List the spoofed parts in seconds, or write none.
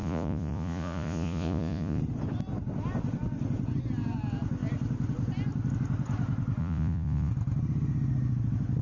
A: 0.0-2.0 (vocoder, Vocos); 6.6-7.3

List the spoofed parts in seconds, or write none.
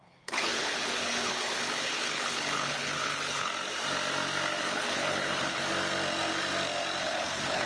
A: 0.0-3.5 (codec, HILCodec); 4.6-5.6; 7.0-7.7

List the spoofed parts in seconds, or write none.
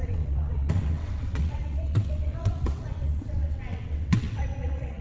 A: 0.0-5.0 (vocoder, WaveNeXt)